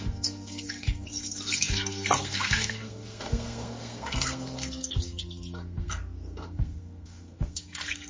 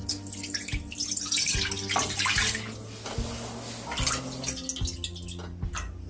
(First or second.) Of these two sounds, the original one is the second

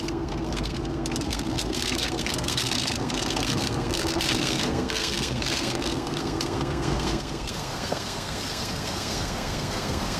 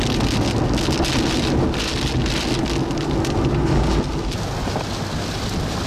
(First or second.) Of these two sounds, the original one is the second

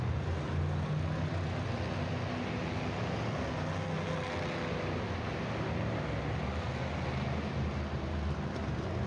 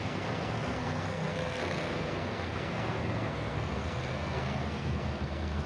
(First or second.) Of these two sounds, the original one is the first